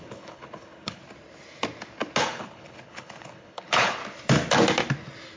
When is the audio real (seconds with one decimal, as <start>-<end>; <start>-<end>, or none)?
1.0-2.2; 4.0-5.4